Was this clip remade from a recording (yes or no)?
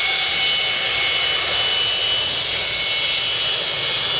no